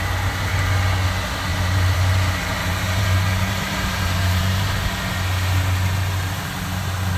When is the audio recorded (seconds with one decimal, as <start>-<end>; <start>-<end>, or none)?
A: 0.0-1.5; 4.7-7.2